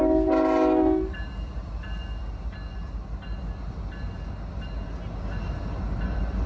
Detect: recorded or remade recorded